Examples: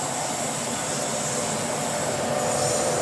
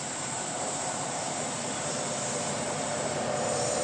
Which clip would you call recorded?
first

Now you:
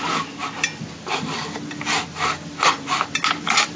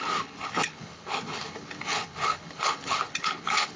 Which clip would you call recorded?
first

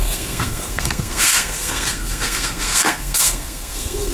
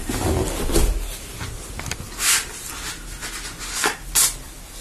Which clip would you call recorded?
second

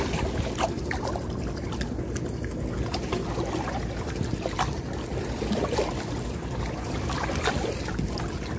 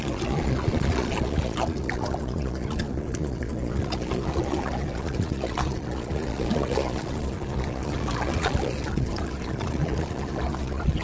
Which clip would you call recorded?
first